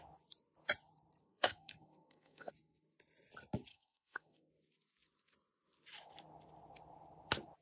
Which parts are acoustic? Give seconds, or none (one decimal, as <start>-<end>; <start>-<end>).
0.0-1.2; 2.5-3.7; 4.5-7.6